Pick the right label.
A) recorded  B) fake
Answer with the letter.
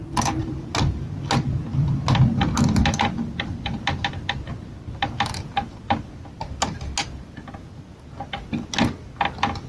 A